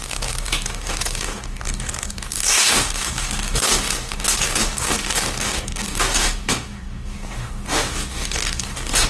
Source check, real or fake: fake